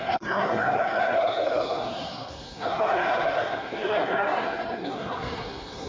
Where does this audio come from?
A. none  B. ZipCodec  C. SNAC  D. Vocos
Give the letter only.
C